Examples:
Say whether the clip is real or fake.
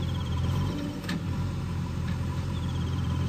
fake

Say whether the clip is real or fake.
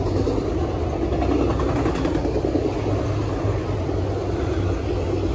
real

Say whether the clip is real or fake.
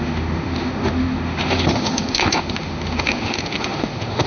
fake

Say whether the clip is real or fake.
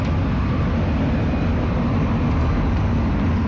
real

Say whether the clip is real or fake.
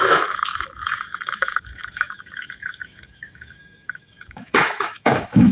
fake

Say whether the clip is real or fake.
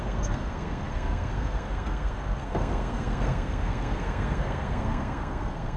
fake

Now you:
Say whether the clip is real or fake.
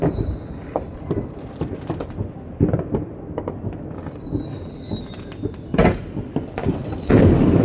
fake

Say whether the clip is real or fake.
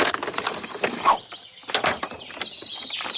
real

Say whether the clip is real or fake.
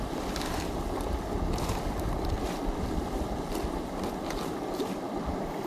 real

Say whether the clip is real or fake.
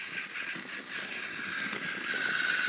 real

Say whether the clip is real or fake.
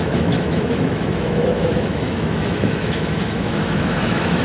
fake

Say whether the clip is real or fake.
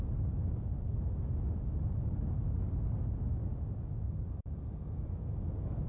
real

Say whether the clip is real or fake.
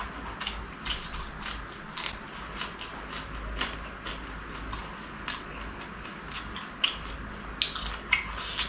real